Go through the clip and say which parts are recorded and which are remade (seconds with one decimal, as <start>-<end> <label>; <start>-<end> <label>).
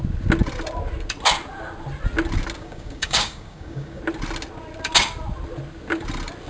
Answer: 0.0-2.6 recorded; 2.6-4.0 remade; 4.0-6.5 recorded